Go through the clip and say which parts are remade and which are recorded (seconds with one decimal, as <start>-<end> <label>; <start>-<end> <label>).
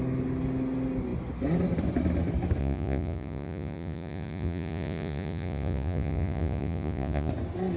0.0-2.6 recorded; 2.6-7.3 remade; 7.3-7.8 recorded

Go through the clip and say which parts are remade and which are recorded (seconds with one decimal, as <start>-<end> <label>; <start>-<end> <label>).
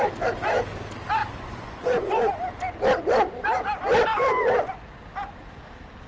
0.0-1.2 recorded; 1.2-2.3 remade; 2.3-6.1 recorded